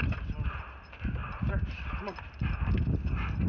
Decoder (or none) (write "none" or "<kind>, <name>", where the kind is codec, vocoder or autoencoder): none